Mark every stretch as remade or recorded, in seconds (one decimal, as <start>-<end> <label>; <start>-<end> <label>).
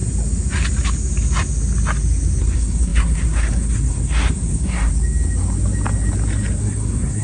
0.0-2.4 recorded; 2.4-4.9 remade; 4.9-6.6 recorded; 6.6-7.2 remade